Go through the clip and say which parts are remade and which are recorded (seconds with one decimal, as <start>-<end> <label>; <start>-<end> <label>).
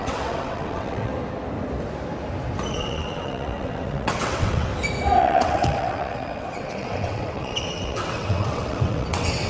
0.0-1.1 remade; 1.1-2.7 recorded; 2.7-4.7 remade; 4.7-5.2 recorded; 5.2-9.5 remade